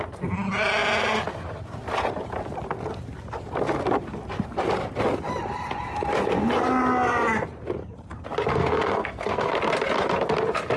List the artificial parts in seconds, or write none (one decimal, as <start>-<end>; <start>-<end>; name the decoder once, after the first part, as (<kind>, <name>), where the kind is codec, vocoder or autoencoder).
8.5-9.5 (codec, SNAC)